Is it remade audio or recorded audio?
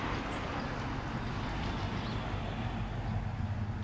recorded